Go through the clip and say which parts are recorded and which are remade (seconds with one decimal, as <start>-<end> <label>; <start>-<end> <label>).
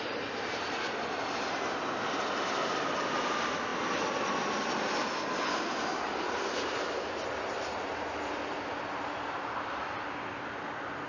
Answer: 0.0-11.1 recorded